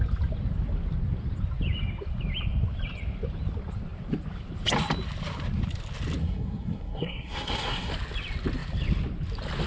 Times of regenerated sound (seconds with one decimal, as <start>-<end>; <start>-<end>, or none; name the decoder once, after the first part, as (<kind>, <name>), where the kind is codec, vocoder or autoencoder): 6.2-7.9 (codec, SNAC)